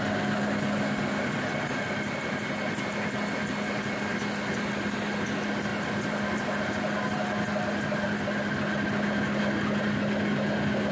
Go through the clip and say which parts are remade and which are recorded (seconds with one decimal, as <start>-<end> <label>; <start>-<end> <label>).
0.0-10.9 recorded